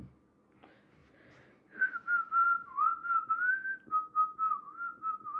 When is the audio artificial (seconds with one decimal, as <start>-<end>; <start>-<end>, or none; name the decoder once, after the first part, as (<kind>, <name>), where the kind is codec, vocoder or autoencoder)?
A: none